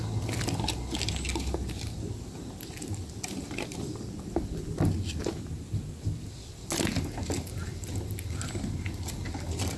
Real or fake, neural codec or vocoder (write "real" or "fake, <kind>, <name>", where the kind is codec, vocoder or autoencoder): real